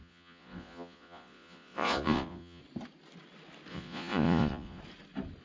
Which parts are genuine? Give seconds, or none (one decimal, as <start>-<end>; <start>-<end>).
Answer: 2.6-3.7; 4.8-5.4